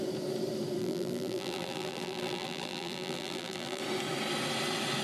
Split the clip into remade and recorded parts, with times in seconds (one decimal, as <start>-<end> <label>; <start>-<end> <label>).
0.0-0.8 recorded; 0.8-3.8 remade; 3.8-5.0 recorded